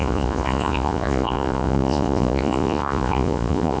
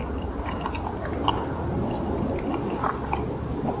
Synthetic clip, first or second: first